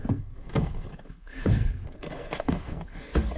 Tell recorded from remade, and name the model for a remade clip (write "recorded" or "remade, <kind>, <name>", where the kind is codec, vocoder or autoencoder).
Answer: remade, codec, SNAC